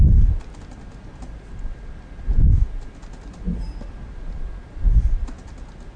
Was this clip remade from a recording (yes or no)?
no